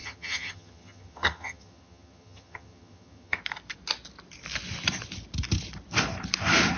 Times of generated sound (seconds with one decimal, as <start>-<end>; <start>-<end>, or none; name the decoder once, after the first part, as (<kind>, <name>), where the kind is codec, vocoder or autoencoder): 0.0-3.4 (vocoder, HiFi-GAN)